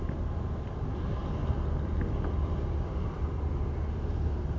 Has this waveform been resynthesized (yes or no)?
no